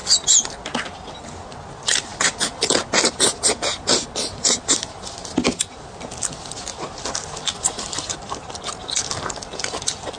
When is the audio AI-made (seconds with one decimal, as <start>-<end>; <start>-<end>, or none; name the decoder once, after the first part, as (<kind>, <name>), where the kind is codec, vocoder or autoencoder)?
none